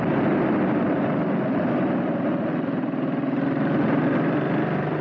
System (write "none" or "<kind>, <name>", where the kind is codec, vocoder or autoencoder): none